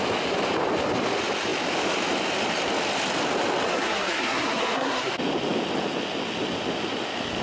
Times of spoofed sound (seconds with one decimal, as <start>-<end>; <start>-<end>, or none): 3.7-5.1